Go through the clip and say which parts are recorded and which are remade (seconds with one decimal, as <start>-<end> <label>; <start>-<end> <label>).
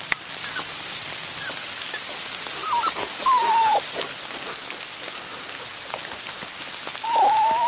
0.0-7.7 recorded